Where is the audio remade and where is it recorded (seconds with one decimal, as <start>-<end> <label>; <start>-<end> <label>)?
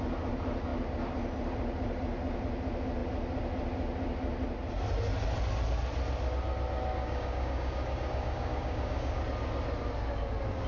0.0-7.0 recorded; 7.0-9.2 remade; 9.2-10.7 recorded